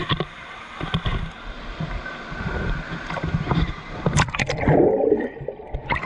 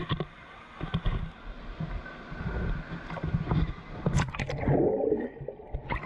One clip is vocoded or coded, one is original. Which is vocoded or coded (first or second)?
first